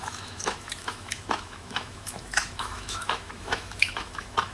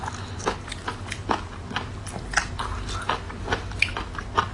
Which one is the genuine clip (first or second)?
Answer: second